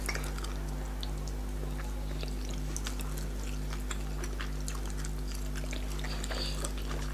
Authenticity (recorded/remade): recorded